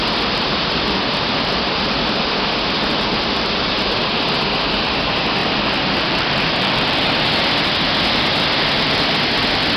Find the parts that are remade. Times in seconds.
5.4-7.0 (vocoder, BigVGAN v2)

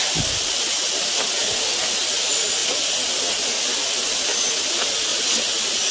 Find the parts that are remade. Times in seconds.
0.0-1.4 (vocoder, BigVGAN v2); 2.0-2.6; 4.5-5.1